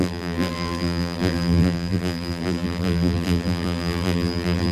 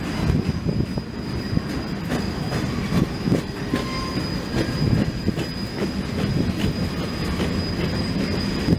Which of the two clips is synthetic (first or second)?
first